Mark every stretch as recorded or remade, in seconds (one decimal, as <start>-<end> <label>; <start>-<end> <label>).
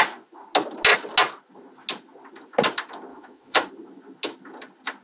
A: 0.0-3.1 recorded; 3.1-3.7 remade; 3.7-5.0 recorded